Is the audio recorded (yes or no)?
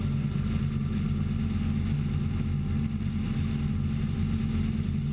yes